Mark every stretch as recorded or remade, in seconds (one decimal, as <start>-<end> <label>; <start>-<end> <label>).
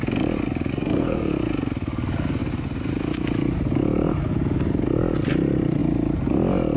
0.0-0.7 recorded; 0.7-1.3 remade; 1.3-6.8 recorded